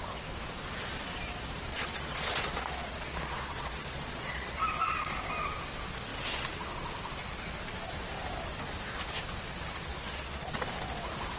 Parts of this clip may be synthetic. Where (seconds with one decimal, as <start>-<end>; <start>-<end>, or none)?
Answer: 1.7-4.7; 9.9-10.6